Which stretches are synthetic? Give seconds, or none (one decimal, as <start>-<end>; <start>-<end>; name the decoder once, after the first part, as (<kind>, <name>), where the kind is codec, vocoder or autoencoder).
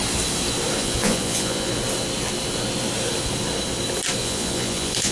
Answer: 0.8-1.7 (vocoder, Vocos); 4.2-5.1